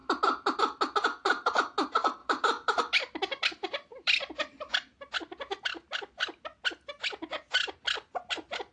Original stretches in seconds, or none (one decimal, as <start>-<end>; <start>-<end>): 0.0-2.2; 2.8-3.9; 4.7-8.7